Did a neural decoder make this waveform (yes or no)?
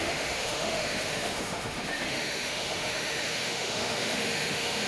yes